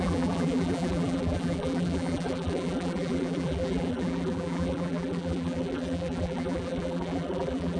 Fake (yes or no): yes